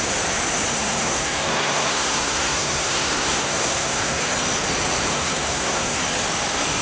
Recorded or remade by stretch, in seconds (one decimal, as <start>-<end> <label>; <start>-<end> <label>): 0.0-0.7 recorded; 0.7-4.2 remade; 4.2-5.1 recorded; 5.1-6.0 remade; 6.0-6.8 recorded